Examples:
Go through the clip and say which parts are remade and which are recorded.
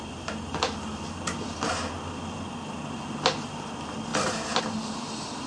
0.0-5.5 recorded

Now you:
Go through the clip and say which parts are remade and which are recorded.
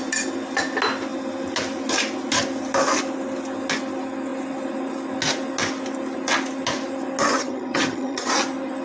0.0-7.3 recorded; 7.3-8.3 remade; 8.3-8.8 recorded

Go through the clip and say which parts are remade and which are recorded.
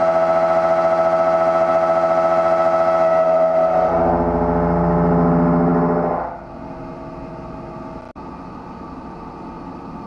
0.0-10.1 recorded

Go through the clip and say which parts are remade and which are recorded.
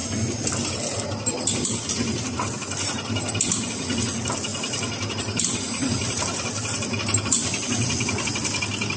0.0-1.9 remade; 1.9-4.5 recorded; 4.5-7.0 remade; 7.0-9.0 recorded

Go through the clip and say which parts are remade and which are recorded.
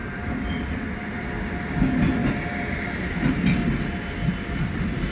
0.0-5.1 recorded